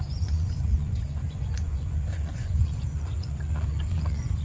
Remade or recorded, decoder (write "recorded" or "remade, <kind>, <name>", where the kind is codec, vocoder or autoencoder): remade, vocoder, Vocos